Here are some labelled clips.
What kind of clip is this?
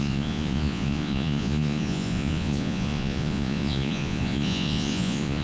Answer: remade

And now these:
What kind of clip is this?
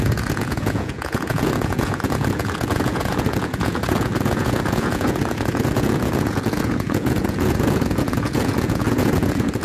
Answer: remade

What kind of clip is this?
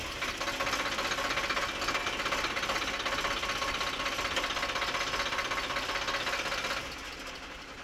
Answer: recorded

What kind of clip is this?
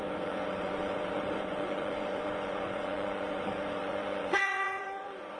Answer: remade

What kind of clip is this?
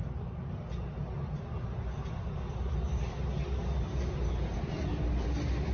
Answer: recorded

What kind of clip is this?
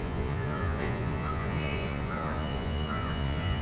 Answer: remade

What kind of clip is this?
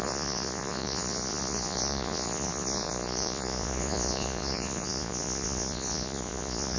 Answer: remade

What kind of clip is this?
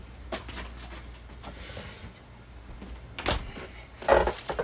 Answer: recorded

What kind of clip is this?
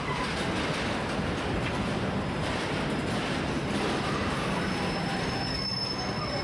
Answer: recorded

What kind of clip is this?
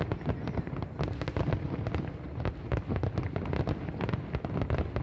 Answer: recorded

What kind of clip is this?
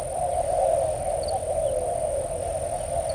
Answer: recorded